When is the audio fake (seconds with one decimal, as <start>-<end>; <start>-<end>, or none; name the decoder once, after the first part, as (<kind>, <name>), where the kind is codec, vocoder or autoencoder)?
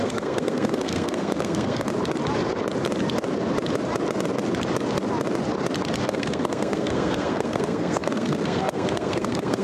0.0-1.9 (codec, SNAC); 6.0-9.6